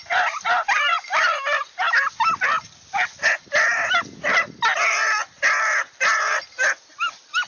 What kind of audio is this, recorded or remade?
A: recorded